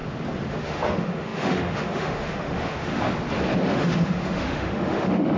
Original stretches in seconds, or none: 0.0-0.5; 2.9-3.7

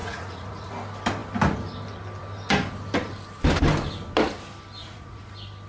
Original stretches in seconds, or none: 0.7-4.8; 5.3-5.7

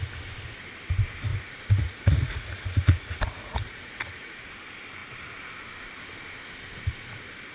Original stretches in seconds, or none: 0.0-1.3; 4.5-7.5

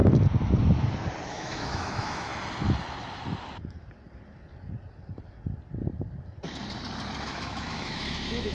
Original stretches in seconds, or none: 0.0-1.3; 2.3-7.2

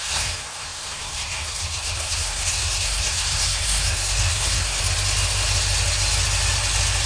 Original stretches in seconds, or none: 4.8-7.1